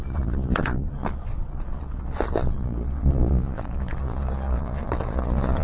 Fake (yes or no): yes